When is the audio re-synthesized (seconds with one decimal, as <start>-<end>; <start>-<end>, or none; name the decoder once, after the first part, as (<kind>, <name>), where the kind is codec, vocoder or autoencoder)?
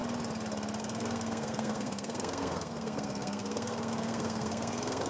0.8-5.1 (codec, SNAC)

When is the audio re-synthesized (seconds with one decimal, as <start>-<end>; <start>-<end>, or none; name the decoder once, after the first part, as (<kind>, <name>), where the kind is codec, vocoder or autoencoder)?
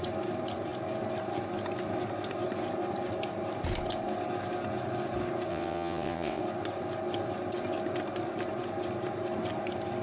5.5-6.4 (vocoder, WaveNeXt)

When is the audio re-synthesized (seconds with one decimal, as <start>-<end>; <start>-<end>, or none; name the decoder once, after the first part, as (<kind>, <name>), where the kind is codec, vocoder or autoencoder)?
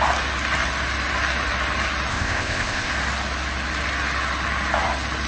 2.1-2.9 (codec, ZipCodec)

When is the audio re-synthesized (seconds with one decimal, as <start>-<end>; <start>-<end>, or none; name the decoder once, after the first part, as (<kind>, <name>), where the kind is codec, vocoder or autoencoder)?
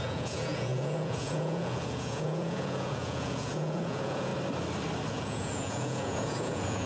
0.0-4.3 (vocoder, Vocos); 5.1-6.9